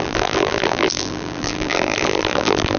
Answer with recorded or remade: remade